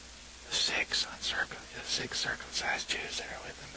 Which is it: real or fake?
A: real